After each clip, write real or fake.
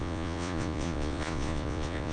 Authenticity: fake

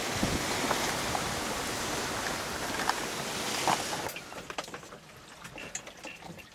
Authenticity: real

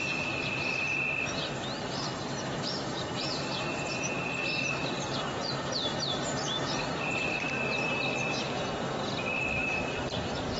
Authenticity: fake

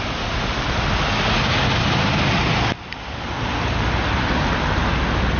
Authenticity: real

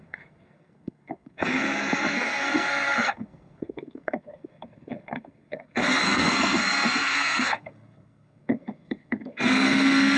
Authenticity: fake